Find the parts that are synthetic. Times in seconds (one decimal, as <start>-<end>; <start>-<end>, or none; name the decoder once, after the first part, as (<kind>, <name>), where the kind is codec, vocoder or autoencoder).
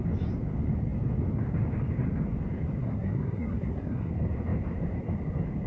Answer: 2.8-4.1 (codec, SNAC)